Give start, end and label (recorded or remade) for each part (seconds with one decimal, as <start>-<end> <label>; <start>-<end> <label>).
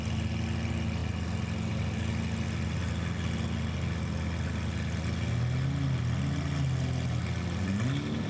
0.0-8.3 recorded